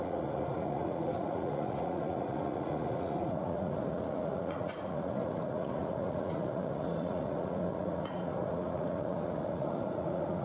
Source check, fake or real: fake